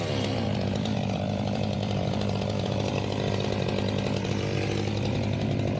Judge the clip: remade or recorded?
remade